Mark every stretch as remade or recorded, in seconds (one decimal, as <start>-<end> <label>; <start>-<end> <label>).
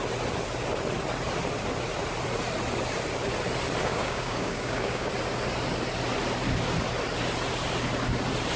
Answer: 0.0-3.8 recorded; 3.8-5.1 remade; 5.1-8.6 recorded